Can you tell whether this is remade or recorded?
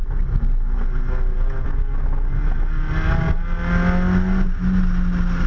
recorded